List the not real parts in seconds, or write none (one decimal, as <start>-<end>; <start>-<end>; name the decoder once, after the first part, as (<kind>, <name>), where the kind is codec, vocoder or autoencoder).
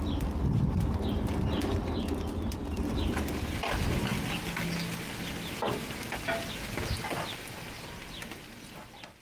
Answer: 2.6-3.1 (vocoder, BigVGAN v2)